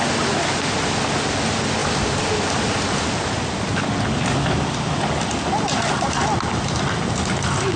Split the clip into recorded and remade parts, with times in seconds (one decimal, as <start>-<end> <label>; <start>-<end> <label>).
0.0-7.8 recorded